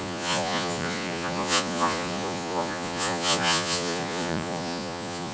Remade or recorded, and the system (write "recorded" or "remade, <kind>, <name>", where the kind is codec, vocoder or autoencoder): remade, vocoder, Vocos